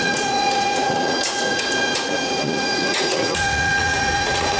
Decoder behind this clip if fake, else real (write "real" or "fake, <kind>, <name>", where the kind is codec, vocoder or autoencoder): fake, vocoder, Vocos